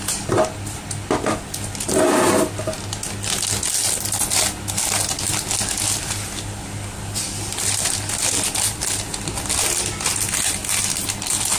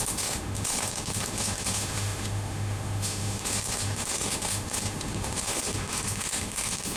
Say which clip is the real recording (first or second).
first